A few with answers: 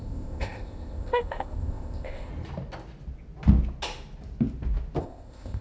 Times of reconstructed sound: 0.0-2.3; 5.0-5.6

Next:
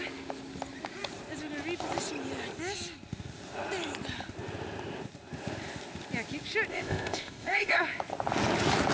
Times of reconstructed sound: 6.7-7.8

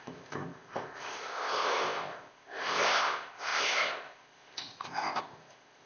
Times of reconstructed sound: 0.0-5.9

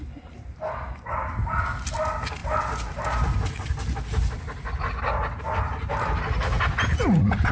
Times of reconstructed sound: none

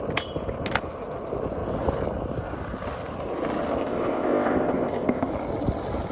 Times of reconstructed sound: 3.8-5.3

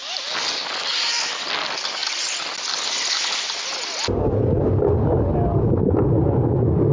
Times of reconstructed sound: none